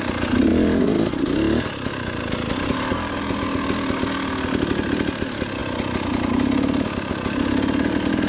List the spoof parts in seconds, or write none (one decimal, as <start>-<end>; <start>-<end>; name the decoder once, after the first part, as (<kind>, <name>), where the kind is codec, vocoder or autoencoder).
none